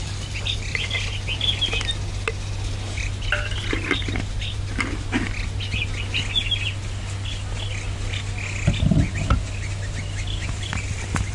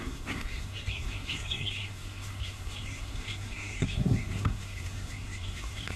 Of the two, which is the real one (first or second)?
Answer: first